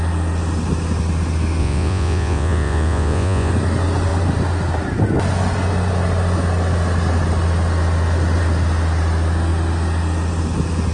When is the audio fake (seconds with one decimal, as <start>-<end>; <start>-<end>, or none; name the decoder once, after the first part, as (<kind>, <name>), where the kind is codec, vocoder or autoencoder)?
1.6-3.5 (vocoder, Vocos)

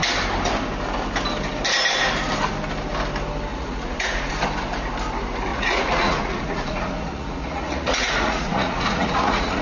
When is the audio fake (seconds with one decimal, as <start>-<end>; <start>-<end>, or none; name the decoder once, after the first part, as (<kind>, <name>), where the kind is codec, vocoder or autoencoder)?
3.5-4.3 (vocoder, Vocos); 5.5-9.6